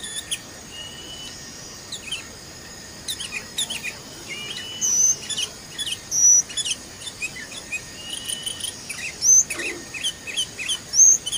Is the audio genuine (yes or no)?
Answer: yes